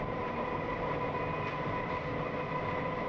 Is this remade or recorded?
recorded